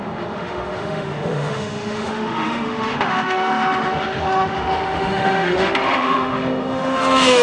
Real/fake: fake